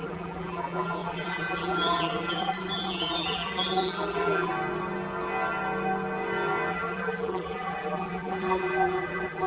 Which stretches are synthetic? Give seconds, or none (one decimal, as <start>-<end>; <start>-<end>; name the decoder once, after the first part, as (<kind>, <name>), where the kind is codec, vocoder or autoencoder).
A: 0.0-4.5 (vocoder, BigVGAN v2); 6.7-9.5